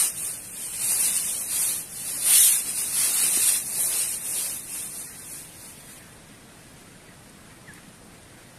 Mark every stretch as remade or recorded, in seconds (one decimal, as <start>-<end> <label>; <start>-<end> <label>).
0.0-2.2 recorded; 2.2-3.9 remade; 3.9-8.6 recorded